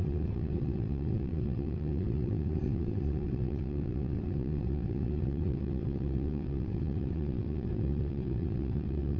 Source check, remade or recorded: remade